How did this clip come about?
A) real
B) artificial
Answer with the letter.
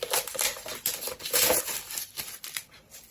A